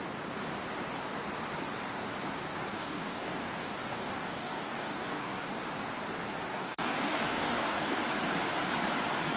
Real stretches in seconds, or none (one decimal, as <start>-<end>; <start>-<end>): 0.0-2.7; 5.5-6.5; 8.0-9.4